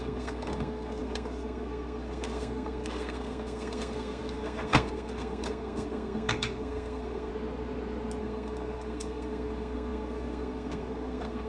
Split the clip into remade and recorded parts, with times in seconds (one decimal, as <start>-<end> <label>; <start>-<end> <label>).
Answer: 0.0-7.3 remade; 7.3-8.2 recorded; 8.2-11.5 remade